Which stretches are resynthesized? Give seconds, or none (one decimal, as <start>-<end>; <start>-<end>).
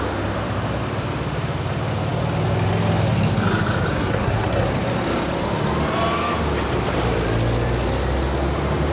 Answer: 3.9-4.7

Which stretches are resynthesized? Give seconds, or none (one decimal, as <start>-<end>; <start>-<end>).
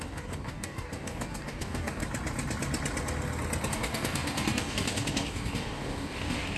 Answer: 0.0-2.0; 3.7-6.6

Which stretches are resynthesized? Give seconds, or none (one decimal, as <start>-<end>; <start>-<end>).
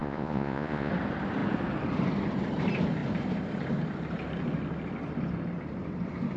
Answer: 0.0-0.9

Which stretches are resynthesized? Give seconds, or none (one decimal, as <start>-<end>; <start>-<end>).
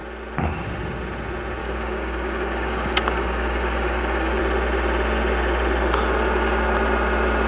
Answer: 1.6-4.4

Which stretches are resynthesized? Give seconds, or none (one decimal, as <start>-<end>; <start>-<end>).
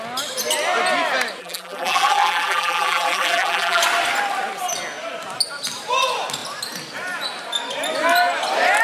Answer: 1.4-3.8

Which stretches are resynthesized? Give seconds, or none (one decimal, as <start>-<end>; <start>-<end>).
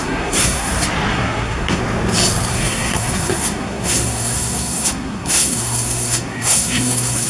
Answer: 0.0-0.7; 1.1-1.8; 2.5-7.3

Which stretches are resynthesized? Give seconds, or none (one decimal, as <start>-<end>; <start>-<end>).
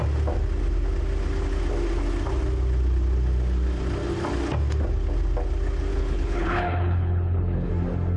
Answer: 5.9-7.7